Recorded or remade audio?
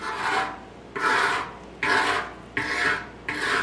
recorded